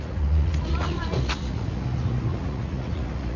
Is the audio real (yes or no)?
no